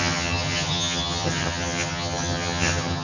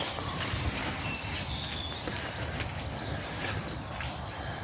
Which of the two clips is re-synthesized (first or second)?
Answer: first